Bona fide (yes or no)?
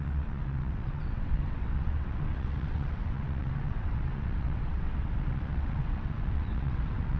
no